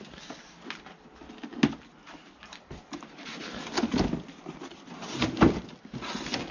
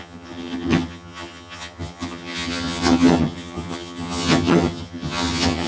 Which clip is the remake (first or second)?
second